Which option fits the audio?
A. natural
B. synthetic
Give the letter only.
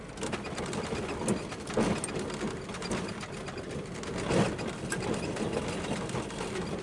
A